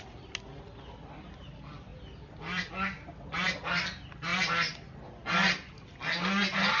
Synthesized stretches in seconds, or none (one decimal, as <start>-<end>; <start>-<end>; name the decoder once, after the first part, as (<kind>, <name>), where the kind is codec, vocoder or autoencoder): none